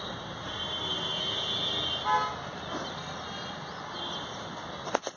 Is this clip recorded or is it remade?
recorded